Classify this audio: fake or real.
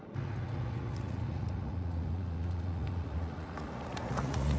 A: fake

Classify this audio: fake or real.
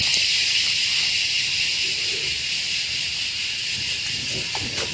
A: real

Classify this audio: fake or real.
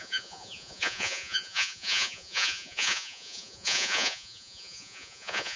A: fake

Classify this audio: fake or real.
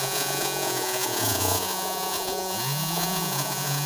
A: fake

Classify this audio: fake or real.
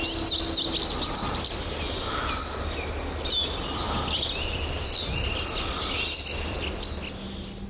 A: real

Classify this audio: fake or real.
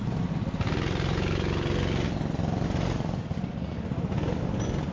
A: real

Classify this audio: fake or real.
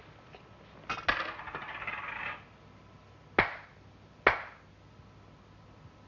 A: real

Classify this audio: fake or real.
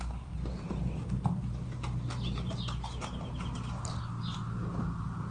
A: real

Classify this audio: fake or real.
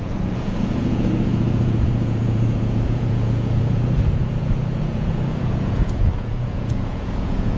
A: fake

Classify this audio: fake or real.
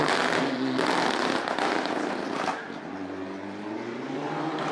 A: real